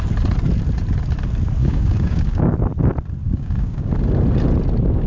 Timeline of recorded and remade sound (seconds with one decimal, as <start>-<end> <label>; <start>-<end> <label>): 0.0-1.6 recorded; 1.6-2.4 remade; 2.4-3.2 recorded; 3.2-3.9 remade; 3.9-5.1 recorded